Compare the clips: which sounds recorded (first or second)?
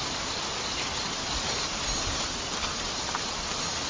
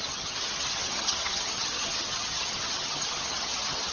first